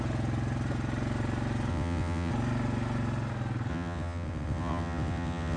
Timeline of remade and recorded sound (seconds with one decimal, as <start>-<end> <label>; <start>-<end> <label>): 0.0-1.7 recorded; 1.7-2.3 remade; 2.3-3.7 recorded; 3.7-5.6 remade